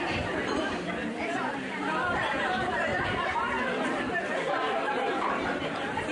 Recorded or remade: remade